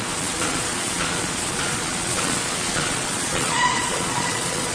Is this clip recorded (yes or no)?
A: no